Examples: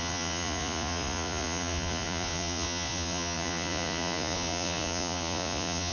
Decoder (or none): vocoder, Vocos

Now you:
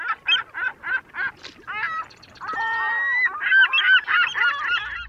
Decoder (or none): none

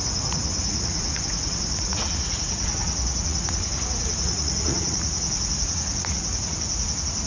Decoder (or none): vocoder, Vocos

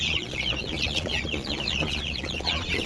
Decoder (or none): vocoder, Vocos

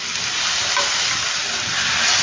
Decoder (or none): none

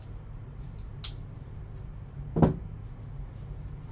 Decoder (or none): none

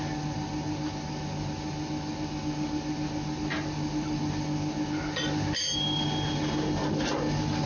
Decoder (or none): none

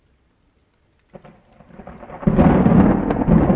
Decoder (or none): none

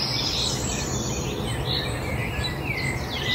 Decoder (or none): none